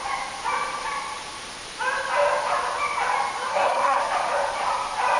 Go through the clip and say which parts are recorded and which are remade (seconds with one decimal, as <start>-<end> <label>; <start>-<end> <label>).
0.0-3.5 recorded; 3.5-4.0 remade; 4.0-5.2 recorded